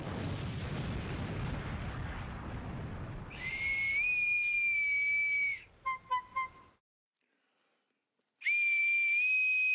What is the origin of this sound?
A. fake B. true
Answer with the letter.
B